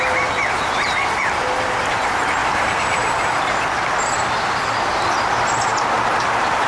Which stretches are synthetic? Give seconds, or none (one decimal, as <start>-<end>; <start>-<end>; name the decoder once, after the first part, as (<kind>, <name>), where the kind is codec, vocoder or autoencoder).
2.4-3.6 (vocoder, BigVGAN v2)